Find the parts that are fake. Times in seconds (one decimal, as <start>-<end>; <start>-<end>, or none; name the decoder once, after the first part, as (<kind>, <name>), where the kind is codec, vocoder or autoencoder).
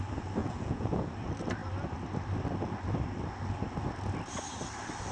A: 0.4-1.1 (vocoder, Vocos)